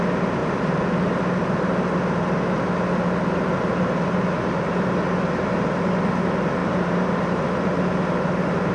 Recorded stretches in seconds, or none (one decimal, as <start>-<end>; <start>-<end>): 0.0-6.6; 7.4-8.7